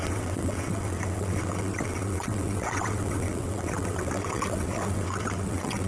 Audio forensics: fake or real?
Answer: fake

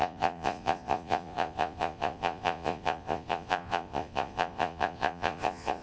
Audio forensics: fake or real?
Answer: fake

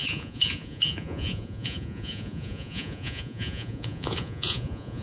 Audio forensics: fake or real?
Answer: fake